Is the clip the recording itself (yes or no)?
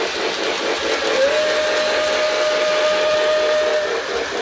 yes